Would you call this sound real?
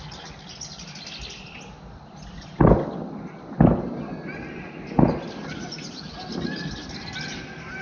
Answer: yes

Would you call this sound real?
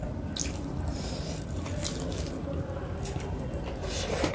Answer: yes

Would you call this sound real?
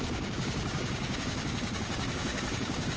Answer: no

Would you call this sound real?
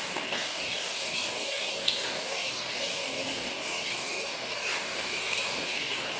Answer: no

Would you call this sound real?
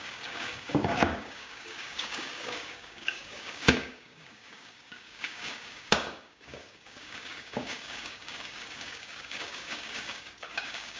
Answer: no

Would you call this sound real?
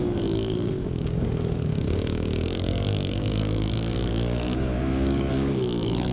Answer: no